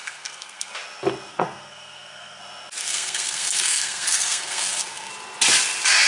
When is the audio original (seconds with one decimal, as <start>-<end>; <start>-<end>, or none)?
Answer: 0.7-1.3; 2.4-2.8; 5.1-6.1